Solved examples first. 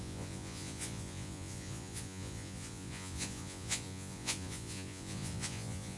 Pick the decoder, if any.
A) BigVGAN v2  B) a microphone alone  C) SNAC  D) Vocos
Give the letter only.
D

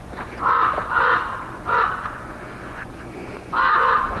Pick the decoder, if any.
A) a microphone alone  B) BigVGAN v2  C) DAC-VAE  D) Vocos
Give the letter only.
D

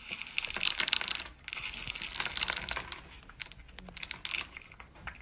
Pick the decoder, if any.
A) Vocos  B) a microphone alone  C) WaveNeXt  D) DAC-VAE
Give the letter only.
B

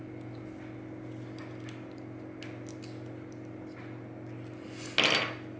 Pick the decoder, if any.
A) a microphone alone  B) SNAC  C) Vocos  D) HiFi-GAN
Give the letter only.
A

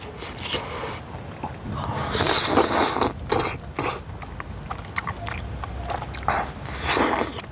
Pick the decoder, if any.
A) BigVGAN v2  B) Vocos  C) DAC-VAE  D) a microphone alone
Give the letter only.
D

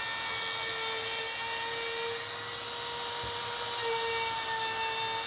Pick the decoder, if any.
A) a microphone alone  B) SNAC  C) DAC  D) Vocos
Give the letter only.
A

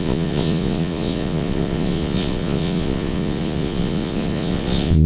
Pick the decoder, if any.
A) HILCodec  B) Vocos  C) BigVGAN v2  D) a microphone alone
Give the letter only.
B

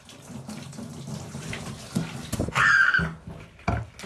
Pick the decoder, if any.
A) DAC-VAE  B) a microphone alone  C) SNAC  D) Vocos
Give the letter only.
B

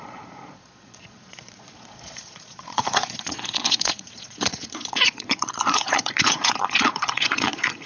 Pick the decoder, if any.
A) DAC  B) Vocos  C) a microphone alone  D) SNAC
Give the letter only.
B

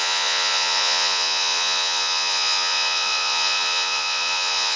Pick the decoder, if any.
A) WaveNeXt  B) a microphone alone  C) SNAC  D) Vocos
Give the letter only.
D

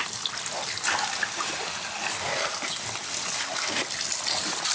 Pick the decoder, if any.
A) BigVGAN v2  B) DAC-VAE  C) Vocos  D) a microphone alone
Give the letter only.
D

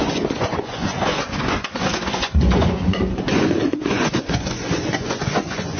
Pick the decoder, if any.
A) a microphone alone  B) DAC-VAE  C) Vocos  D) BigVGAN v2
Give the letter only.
C